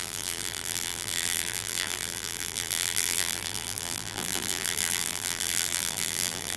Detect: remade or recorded remade